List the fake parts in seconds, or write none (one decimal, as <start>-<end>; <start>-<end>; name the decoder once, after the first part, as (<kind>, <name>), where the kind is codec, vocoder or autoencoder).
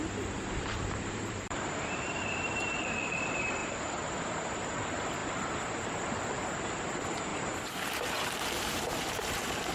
0.0-9.7 (vocoder, BigVGAN v2)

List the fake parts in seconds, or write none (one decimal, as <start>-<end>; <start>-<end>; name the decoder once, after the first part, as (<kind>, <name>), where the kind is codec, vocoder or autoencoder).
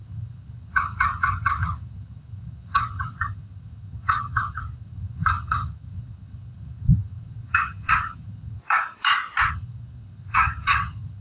0.0-8.6 (vocoder, HiFi-GAN); 9.5-11.2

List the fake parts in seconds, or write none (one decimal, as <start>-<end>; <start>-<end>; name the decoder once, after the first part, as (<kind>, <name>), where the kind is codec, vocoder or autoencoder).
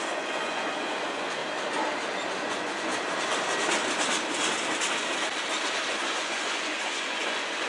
0.0-1.4 (vocoder, Vocos); 2.3-2.9; 5.9-7.7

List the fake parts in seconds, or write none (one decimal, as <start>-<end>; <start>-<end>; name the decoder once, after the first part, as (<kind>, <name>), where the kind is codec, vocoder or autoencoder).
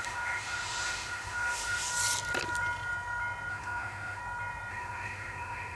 0.0-1.9 (autoencoder, DAC-VAE); 3.5-4.2; 4.7-5.8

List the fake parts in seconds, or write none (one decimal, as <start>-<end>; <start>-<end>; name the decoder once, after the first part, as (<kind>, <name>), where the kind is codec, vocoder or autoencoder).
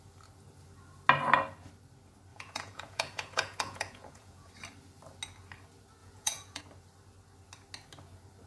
2.3-4.5 (vocoder, Vocos); 6.0-6.6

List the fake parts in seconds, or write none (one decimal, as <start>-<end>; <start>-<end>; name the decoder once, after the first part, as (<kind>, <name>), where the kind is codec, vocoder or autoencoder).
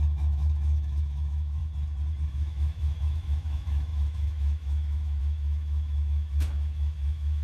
0.0-1.6 (autoencoder, DAC-VAE); 2.3-7.4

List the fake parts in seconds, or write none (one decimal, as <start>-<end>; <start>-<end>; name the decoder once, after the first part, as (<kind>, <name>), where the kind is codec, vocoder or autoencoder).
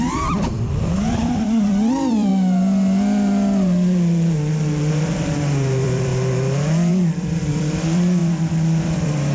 0.0-2.3 (vocoder, BigVGAN v2); 4.9-6.1; 6.9-9.3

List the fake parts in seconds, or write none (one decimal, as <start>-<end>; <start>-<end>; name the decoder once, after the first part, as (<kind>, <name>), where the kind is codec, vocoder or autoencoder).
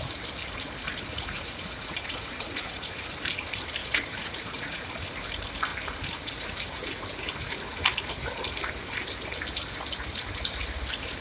1.1-3.1 (vocoder, Vocos); 3.8-4.9